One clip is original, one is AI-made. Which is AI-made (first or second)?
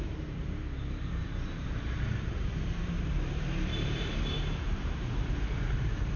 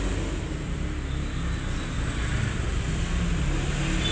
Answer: first